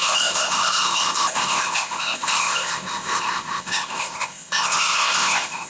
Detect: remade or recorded remade